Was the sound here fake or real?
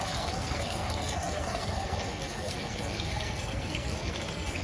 fake